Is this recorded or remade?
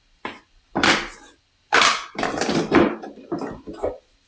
remade